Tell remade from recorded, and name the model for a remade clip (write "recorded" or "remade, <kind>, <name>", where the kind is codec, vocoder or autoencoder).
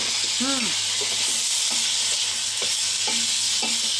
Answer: recorded